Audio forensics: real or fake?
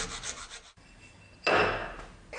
real